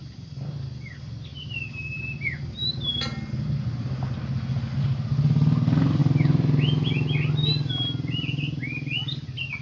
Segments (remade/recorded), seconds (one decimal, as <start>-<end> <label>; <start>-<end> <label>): 0.0-9.6 recorded